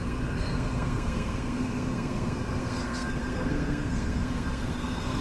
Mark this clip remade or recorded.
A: remade